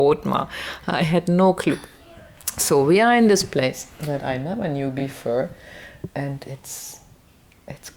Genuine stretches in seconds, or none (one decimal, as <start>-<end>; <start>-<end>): 0.0-0.9; 4.2-5.0; 5.5-6.0; 6.8-8.0